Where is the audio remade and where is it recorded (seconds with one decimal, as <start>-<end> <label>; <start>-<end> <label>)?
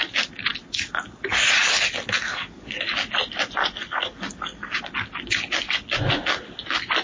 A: 0.0-2.3 recorded; 2.3-2.8 remade; 2.8-3.6 recorded; 3.6-4.8 remade; 4.8-7.0 recorded